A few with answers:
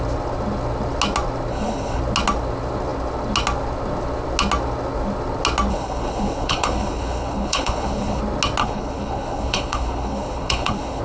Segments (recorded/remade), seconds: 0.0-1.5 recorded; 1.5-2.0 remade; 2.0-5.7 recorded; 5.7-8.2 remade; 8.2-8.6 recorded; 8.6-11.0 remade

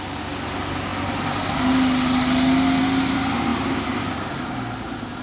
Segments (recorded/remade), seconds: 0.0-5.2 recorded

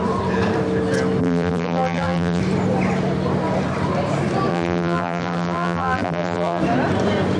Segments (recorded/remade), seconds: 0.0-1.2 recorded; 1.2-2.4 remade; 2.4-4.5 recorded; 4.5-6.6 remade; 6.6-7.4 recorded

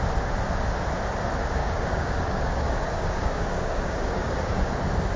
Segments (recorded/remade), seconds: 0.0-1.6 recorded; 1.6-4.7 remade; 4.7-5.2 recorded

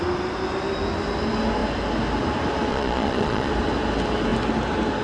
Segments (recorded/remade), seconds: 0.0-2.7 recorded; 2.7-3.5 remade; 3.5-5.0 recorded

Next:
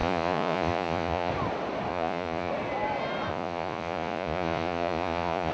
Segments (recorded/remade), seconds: 0.0-1.3 remade; 1.3-1.9 recorded; 1.9-2.5 remade; 2.5-3.3 recorded; 3.3-5.5 remade